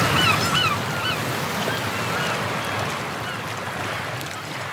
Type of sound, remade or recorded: recorded